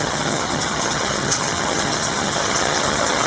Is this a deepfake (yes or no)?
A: yes